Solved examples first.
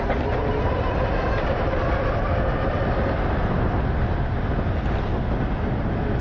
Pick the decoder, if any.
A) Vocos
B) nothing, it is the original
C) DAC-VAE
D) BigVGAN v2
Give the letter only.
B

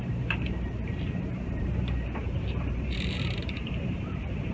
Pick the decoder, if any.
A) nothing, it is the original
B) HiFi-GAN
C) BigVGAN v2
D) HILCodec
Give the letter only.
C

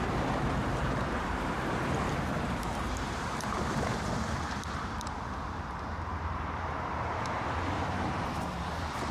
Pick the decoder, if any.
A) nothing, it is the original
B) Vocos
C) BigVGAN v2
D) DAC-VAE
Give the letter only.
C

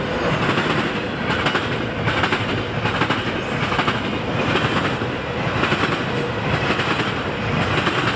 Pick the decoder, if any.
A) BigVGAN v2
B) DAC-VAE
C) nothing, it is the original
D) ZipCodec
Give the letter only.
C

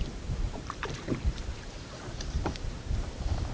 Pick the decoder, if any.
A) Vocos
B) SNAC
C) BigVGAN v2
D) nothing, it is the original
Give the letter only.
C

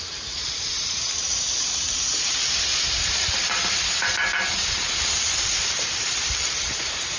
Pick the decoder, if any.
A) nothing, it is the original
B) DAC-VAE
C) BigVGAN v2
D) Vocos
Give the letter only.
C